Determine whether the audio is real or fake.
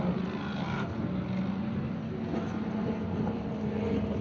real